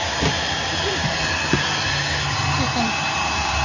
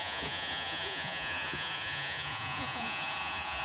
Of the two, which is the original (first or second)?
first